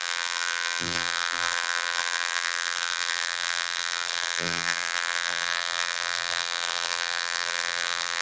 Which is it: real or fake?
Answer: fake